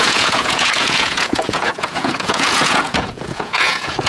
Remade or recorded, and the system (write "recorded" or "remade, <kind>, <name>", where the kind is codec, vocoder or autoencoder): remade, vocoder, Vocos